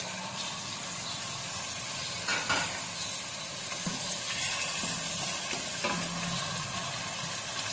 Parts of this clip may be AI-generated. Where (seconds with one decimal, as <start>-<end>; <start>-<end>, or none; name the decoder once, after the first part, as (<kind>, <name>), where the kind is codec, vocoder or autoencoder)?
none